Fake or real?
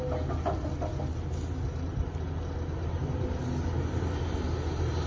real